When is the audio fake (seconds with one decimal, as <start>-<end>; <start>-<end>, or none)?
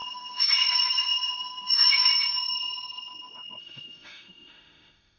0.0-2.1; 3.6-5.2